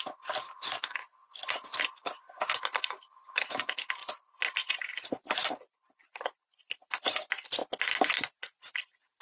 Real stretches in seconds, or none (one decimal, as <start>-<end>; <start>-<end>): 0.0-4.0; 4.8-5.4; 6.7-9.2